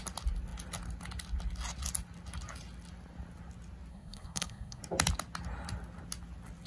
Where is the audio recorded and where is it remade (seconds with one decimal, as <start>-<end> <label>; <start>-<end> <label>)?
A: 0.0-3.9 recorded; 3.9-4.8 remade; 4.8-6.7 recorded